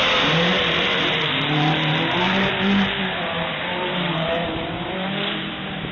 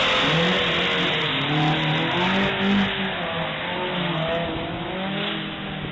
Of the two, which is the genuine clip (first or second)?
second